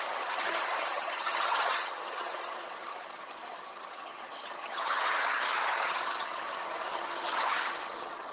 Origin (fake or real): fake